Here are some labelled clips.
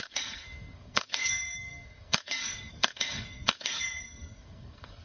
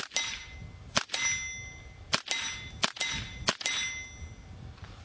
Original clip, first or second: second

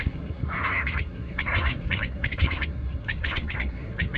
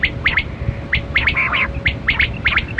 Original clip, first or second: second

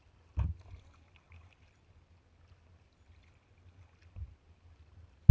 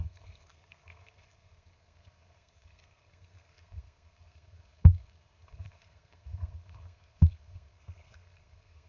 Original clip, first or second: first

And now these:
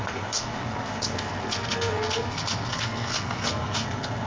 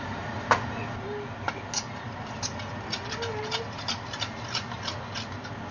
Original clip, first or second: second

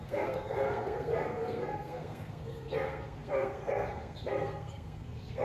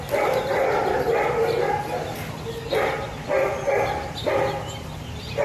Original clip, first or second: second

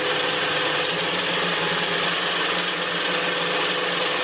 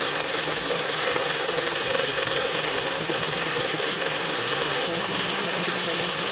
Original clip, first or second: first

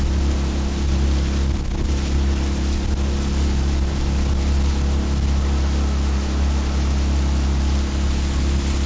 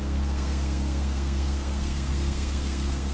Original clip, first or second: first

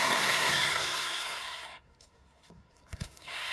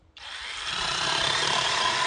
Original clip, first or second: second